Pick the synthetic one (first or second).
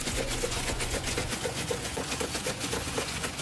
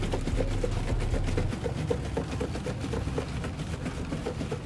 first